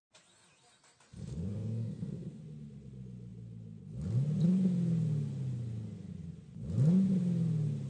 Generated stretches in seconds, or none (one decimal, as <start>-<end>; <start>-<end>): 1.5-2.4